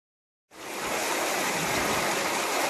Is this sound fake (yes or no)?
no